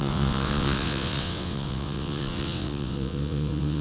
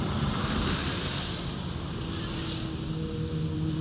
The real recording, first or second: second